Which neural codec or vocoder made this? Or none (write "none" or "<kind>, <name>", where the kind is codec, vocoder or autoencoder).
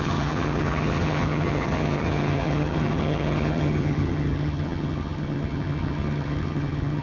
vocoder, HiFi-GAN